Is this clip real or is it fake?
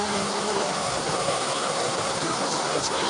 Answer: fake